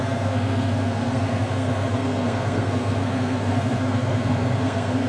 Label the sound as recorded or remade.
remade